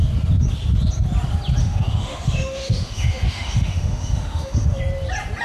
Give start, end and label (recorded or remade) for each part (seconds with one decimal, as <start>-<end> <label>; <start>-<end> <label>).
0.0-1.6 recorded; 1.6-4.8 remade; 4.8-5.4 recorded